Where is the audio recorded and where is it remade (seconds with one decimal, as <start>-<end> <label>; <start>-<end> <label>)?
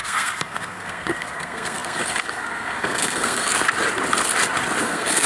0.0-3.5 remade; 3.5-4.8 recorded; 4.8-5.3 remade